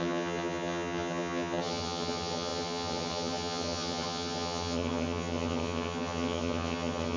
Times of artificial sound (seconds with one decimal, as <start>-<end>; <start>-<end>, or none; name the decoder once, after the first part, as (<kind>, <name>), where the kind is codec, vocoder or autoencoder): 0.0-7.2 (vocoder, HiFi-GAN)